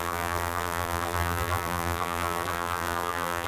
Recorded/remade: remade